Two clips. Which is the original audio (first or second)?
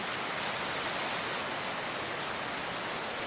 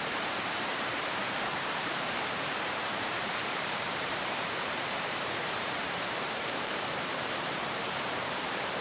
first